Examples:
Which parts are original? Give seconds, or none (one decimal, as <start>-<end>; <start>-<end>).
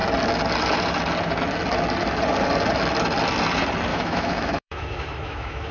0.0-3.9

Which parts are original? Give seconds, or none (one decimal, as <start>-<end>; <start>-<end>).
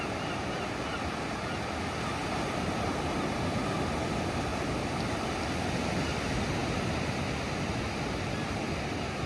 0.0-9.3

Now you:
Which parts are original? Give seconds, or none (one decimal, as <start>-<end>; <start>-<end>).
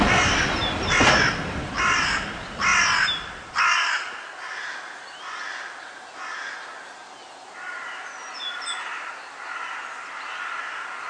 0.0-11.1